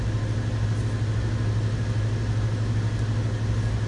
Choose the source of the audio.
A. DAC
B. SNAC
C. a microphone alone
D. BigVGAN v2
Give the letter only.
C